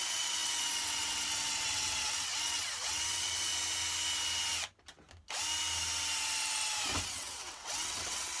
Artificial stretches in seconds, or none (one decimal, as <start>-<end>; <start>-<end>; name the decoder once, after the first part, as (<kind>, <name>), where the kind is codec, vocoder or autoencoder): 0.0-3.5 (vocoder, WaveNeXt); 7.0-8.4